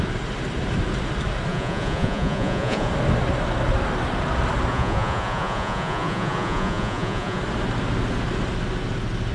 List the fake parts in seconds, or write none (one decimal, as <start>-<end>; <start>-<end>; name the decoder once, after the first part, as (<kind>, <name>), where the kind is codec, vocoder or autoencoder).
1.5-2.9 (vocoder, Vocos); 4.7-7.4